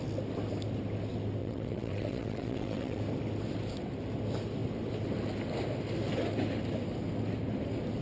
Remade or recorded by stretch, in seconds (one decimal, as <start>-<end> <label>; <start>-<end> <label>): 0.0-1.4 recorded; 1.4-3.0 remade; 3.0-8.0 recorded